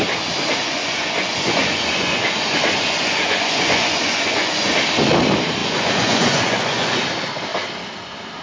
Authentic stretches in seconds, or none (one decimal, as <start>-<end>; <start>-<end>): 0.0-0.6; 4.7-5.6; 7.0-8.4